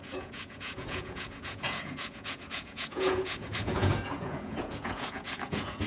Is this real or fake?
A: fake